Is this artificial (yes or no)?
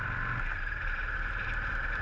no